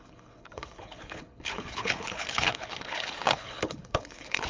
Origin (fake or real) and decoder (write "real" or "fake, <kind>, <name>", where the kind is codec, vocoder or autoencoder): fake, codec, HILCodec